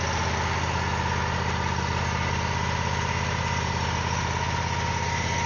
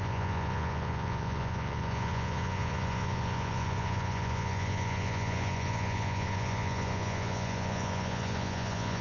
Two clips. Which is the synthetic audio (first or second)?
second